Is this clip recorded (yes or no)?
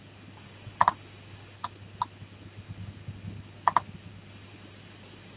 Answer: yes